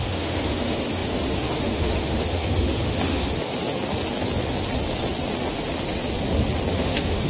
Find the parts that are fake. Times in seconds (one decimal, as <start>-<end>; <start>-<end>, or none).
0.0-3.5; 6.7-7.3